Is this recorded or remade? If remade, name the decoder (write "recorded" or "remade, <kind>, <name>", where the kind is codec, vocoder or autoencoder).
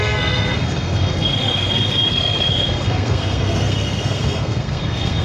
remade, codec, SNAC